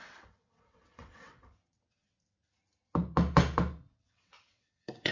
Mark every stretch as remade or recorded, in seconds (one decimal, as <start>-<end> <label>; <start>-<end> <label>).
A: 0.0-2.0 remade; 2.0-3.9 recorded; 3.9-5.1 remade